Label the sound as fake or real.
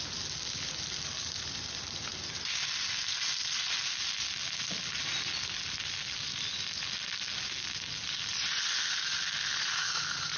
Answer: real